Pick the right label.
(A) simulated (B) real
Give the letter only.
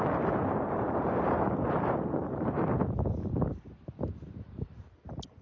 A